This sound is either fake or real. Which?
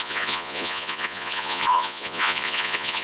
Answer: fake